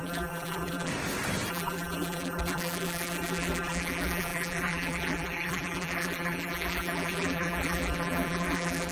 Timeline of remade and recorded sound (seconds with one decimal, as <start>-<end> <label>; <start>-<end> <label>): 0.0-0.9 remade; 0.9-1.5 recorded; 1.5-8.9 remade